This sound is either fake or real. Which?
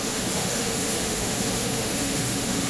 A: fake